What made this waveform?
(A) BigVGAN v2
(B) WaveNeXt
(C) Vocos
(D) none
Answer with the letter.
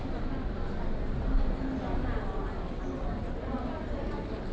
D